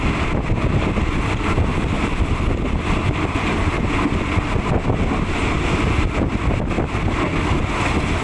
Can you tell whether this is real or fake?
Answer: real